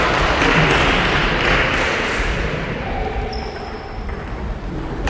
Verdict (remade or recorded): remade